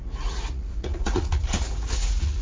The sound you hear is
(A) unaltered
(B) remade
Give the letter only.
B